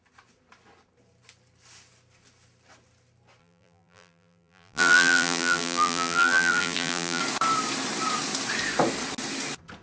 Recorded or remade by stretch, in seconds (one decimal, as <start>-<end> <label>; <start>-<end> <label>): 0.0-3.4 recorded; 3.4-7.2 remade; 7.2-9.8 recorded